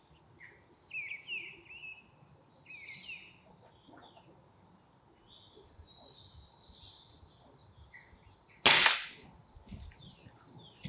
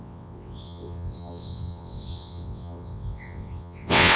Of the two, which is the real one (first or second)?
first